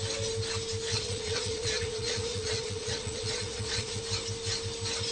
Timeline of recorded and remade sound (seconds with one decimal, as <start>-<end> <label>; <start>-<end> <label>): 0.0-0.9 recorded; 0.9-4.0 remade; 4.0-5.1 recorded